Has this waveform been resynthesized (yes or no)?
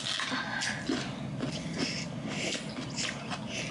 no